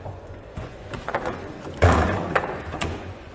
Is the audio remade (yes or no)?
yes